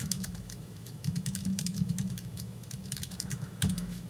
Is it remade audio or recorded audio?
remade